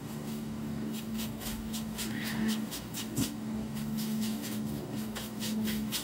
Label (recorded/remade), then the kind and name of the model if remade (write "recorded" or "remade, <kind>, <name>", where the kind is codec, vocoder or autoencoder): remade, codec, DAC